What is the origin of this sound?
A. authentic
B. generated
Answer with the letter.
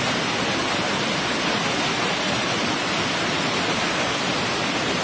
A